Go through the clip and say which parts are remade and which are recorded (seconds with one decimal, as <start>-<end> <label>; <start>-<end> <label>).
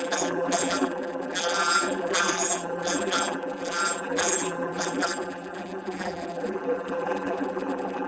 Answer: 0.0-8.1 remade